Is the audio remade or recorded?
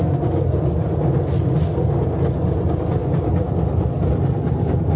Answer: recorded